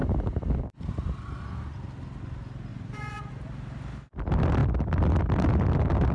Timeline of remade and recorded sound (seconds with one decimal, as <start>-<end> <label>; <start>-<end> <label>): 0.0-2.7 recorded; 2.7-3.3 remade; 3.3-6.1 recorded